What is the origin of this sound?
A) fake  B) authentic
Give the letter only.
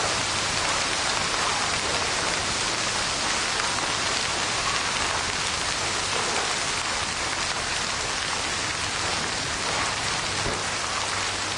B